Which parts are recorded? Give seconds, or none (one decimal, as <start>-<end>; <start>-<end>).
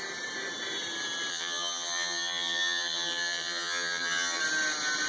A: 0.0-1.3; 4.4-5.1